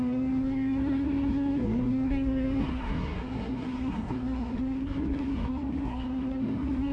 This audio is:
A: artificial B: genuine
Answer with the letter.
A